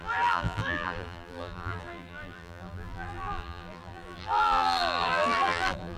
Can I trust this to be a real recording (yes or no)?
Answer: no